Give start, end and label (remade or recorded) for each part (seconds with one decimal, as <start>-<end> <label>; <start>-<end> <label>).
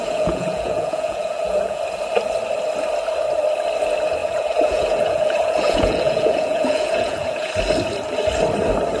0.0-1.8 remade; 1.8-4.2 recorded; 4.2-7.5 remade; 7.5-9.0 recorded